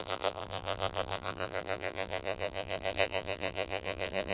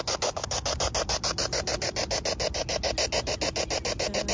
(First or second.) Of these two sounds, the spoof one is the first